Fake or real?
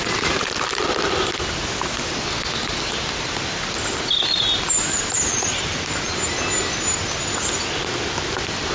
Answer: real